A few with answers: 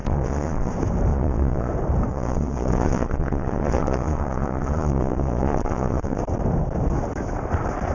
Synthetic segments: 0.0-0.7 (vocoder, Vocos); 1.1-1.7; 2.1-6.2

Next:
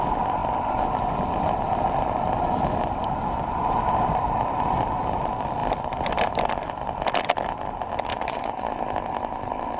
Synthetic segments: 8.1-8.7 (vocoder, Vocos)

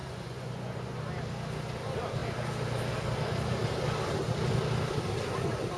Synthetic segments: 0.0-1.0 (vocoder, Vocos)

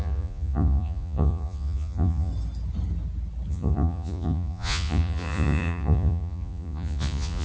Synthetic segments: 0.0-2.3 (vocoder, Vocos); 3.5-7.4

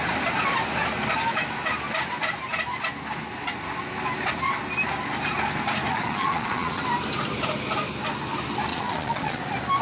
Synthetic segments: 5.9-6.8 (vocoder, Vocos); 8.7-9.4

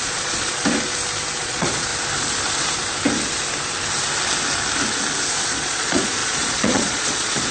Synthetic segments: 0.0-0.6 (vocoder, Vocos); 1.4-1.9; 5.3-7.5

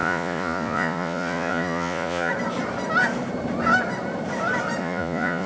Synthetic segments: 0.0-2.3 (vocoder, Vocos); 4.8-5.5